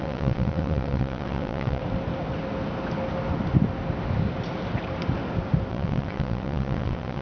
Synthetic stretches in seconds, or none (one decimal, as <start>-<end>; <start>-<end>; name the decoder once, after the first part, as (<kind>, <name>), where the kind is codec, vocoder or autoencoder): 0.0-1.8 (vocoder, WaveNeXt); 5.7-7.2